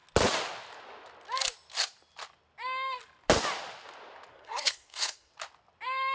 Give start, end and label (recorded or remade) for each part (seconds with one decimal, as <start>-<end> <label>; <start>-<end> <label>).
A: 0.0-4.3 recorded; 4.3-5.3 remade; 5.3-6.1 recorded